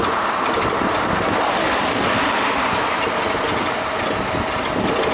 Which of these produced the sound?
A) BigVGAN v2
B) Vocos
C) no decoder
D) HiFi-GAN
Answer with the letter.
C